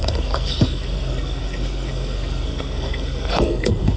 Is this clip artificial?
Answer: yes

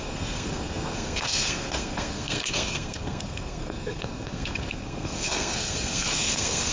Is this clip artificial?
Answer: yes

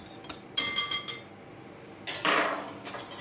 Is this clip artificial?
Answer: no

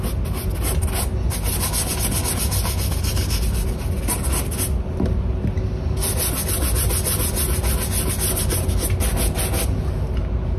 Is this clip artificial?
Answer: no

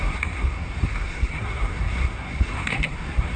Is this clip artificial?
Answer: yes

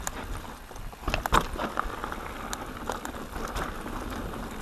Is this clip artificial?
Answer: no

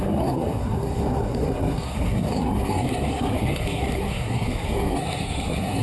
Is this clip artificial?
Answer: yes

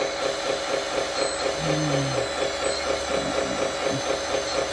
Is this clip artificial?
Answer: no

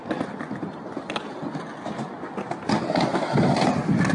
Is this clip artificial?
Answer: no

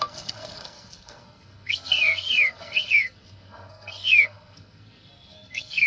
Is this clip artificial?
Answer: yes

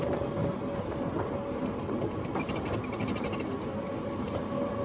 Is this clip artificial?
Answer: no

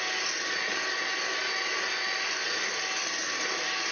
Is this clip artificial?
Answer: no